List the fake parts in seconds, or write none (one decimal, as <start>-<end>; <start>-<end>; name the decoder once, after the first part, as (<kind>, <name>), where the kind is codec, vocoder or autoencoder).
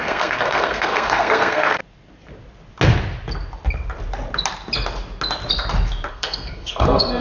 0.0-1.8 (codec, SNAC); 6.1-7.2